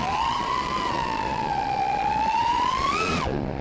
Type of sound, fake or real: fake